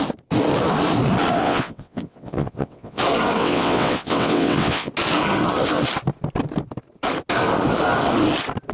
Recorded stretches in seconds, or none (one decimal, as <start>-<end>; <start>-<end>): 0.0-1.4; 3.0-3.4; 4.9-8.7